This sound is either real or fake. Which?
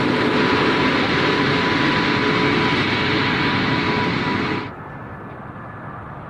real